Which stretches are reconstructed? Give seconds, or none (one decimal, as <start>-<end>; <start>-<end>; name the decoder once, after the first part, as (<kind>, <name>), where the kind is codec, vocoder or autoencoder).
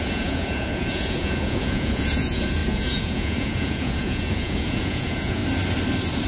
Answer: 0.0-5.4 (vocoder, Vocos)